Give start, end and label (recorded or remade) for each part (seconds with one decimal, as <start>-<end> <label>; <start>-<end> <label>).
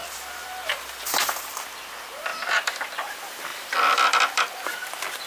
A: 0.0-1.2 remade; 1.2-2.3 recorded; 2.3-2.9 remade; 2.9-3.5 recorded; 3.5-4.8 remade; 4.8-5.3 recorded